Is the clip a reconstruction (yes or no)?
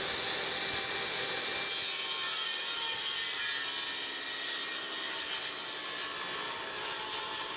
no